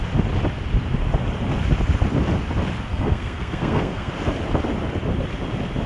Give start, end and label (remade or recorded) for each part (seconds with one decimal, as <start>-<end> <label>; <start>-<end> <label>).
0.0-2.9 recorded; 2.9-4.1 remade; 4.1-5.9 recorded